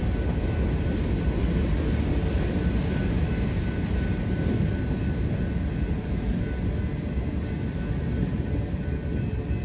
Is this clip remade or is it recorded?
recorded